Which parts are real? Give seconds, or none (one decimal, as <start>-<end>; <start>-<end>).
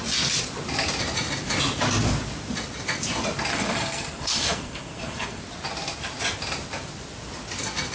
0.0-3.5; 5.4-7.9